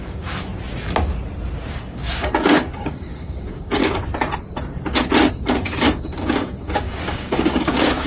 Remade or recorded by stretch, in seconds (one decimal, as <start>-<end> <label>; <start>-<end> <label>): 0.0-0.5 remade; 0.5-1.7 recorded; 1.7-3.8 remade; 3.8-5.3 recorded; 5.3-8.1 remade